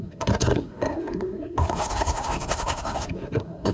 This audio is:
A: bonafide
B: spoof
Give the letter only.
B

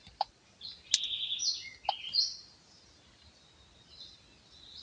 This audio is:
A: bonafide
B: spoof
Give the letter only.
A